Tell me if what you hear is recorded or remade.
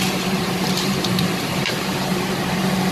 remade